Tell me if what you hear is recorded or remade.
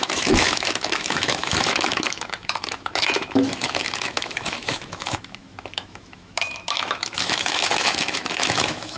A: remade